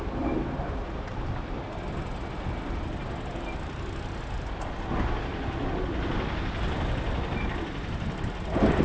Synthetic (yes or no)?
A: no